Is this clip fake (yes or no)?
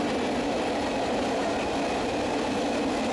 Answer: no